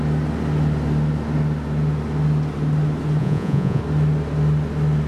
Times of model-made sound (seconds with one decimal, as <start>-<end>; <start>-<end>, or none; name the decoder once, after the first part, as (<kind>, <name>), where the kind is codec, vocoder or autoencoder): 3.2-3.8 (vocoder, Vocos)